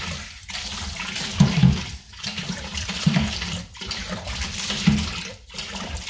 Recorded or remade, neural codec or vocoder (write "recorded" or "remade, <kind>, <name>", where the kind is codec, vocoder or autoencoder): remade, vocoder, BigVGAN v2